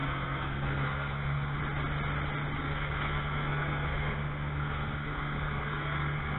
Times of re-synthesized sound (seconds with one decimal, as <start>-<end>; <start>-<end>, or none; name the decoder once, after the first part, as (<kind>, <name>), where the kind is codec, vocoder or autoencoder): 0.0-1.6 (codec, SNAC); 2.6-6.4